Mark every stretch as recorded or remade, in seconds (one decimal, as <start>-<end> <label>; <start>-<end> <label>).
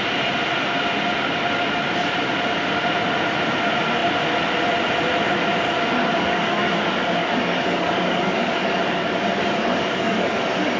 0.0-6.1 recorded; 6.1-10.4 remade; 10.4-10.8 recorded